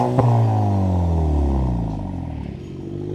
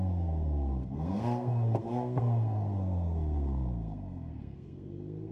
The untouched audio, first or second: first